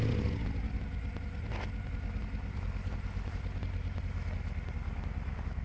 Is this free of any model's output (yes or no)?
yes